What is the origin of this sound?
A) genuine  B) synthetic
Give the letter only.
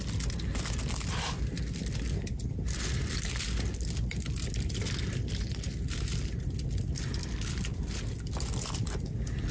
A